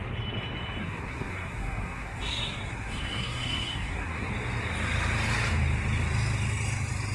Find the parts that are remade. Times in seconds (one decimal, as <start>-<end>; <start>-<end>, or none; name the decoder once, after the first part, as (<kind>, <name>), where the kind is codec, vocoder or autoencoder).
0.8-4.3 (codec, SNAC)